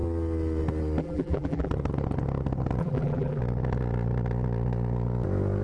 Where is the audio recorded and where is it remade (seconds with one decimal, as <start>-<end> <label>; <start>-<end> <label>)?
0.0-1.0 recorded; 1.0-1.7 remade; 1.7-2.8 recorded; 2.8-3.4 remade; 3.4-5.6 recorded